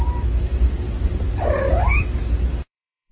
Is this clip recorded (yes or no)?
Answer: no